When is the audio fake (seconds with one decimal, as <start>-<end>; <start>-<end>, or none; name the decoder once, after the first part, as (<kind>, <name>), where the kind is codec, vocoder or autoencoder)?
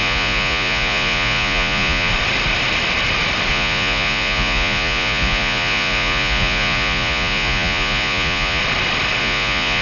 0.0-2.1 (vocoder, Vocos); 3.5-8.6; 9.2-9.8